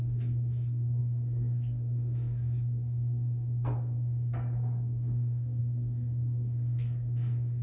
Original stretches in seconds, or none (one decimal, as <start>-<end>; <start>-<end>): none